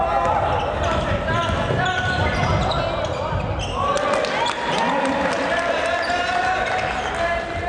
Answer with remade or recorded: recorded